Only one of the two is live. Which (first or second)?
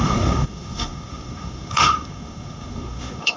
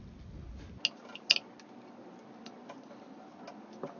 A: second